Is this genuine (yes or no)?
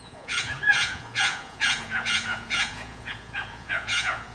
no